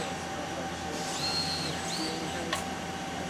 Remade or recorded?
recorded